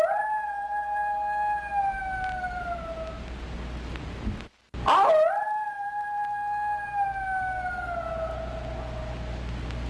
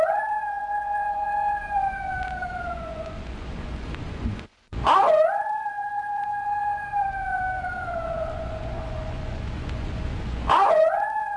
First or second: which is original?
first